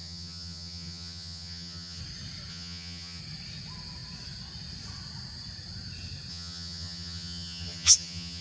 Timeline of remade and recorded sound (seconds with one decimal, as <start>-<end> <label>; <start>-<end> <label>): 0.0-2.0 remade; 2.0-2.5 recorded; 2.5-3.2 remade; 3.2-6.3 recorded; 6.3-8.4 remade